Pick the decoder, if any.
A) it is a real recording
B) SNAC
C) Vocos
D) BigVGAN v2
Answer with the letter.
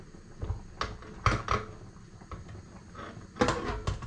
A